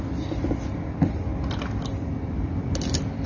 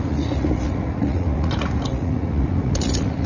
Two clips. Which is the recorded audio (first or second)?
first